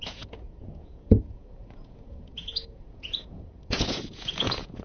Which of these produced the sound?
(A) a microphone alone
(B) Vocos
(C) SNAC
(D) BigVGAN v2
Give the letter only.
B